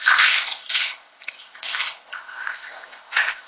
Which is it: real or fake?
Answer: fake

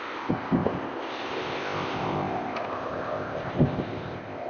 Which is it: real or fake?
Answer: fake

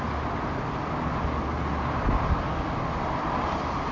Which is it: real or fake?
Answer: real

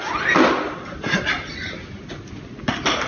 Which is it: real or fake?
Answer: real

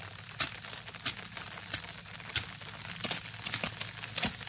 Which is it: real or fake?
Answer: real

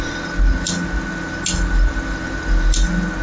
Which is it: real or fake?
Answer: real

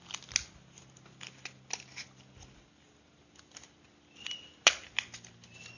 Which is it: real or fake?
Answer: real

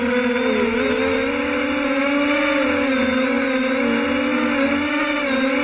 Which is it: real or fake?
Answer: real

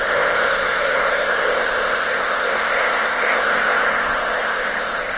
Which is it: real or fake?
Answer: fake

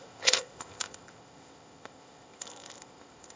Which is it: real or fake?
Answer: fake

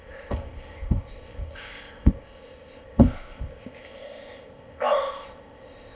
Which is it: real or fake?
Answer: fake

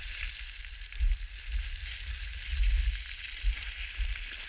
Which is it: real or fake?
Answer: real